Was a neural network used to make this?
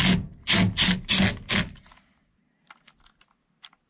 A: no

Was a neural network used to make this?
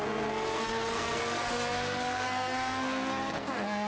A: yes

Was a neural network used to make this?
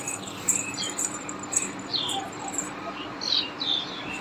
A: no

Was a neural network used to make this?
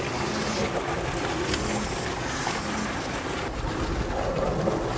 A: no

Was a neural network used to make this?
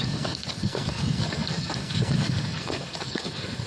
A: yes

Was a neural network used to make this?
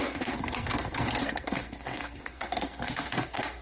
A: yes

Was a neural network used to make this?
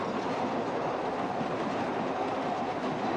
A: no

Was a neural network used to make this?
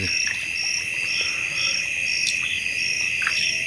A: no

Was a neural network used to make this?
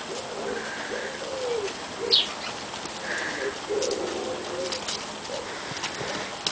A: no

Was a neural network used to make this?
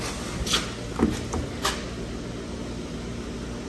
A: no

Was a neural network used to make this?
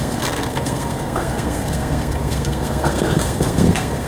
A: yes